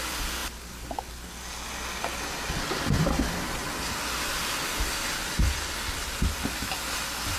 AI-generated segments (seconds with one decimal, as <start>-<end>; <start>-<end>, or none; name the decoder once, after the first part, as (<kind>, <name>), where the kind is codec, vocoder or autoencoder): 4.4-5.4 (vocoder, BigVGAN v2)